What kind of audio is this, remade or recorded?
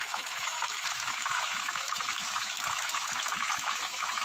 remade